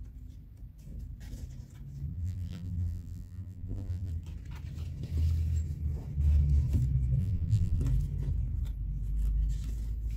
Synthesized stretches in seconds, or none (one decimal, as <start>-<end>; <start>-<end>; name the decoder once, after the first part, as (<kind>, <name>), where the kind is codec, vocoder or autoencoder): 2.1-4.1 (vocoder, BigVGAN v2); 7.2-7.8